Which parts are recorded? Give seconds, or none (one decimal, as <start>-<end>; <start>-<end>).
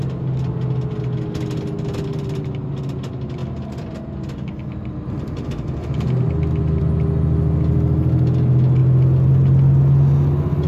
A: 0.0-2.1; 2.6-10.7